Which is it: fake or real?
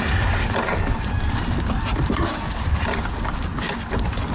real